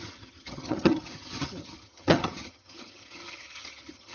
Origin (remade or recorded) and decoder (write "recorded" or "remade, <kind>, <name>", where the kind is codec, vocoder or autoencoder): remade, vocoder, HiFi-GAN